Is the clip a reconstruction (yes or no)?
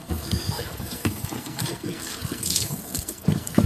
yes